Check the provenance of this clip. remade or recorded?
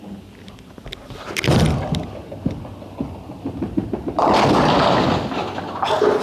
recorded